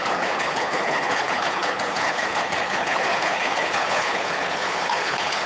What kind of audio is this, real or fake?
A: fake